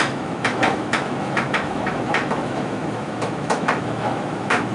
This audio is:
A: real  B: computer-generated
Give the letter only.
B